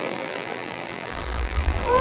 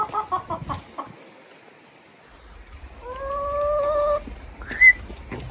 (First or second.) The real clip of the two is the second